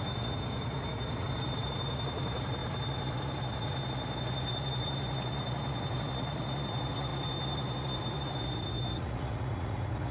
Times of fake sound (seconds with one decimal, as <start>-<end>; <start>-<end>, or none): 0.0-10.1